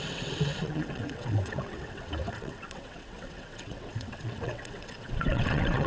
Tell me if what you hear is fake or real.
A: fake